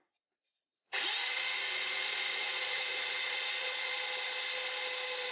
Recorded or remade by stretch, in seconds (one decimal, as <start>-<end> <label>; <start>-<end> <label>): 0.0-0.7 recorded; 0.7-3.9 remade; 3.9-5.3 recorded